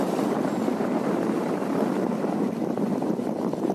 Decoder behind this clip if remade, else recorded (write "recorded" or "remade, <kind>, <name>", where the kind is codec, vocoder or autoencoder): recorded